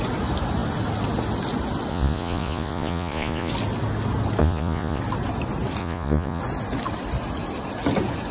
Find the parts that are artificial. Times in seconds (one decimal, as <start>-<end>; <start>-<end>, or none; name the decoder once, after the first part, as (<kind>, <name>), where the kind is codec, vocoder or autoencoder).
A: 1.9-3.5 (vocoder, Vocos); 4.4-5.0; 5.8-6.4